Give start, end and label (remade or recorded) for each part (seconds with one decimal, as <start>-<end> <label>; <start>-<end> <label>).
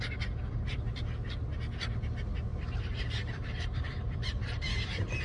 0.0-2.5 recorded; 2.5-5.2 remade